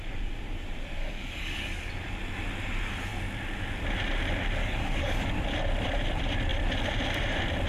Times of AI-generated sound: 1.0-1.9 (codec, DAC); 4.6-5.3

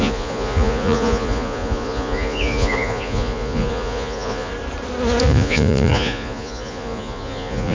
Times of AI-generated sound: 0.0-4.5 (vocoder, Vocos); 5.2-7.7

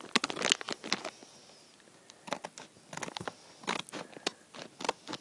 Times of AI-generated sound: none